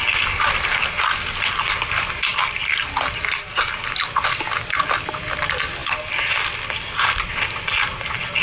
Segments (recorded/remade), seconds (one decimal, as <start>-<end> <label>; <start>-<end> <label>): 0.0-8.4 recorded